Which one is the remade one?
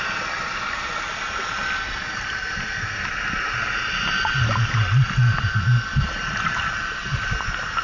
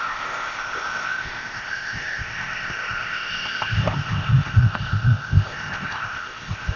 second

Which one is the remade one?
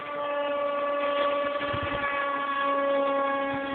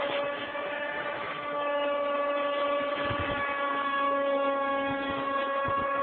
second